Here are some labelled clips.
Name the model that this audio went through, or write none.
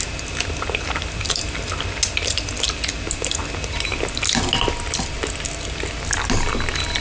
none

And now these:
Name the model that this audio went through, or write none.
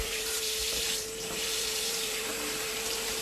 vocoder, BigVGAN v2